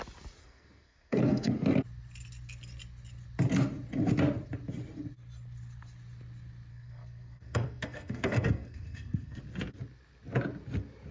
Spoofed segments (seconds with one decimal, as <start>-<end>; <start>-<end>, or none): 0.4-1.5; 6.7-9.4